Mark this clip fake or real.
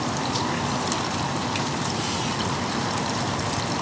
real